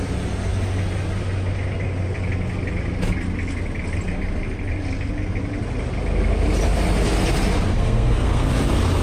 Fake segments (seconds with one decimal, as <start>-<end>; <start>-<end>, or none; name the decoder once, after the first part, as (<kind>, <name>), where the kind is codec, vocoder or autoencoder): 7.7-8.5 (codec, SNAC)